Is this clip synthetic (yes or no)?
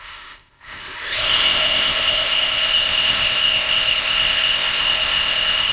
yes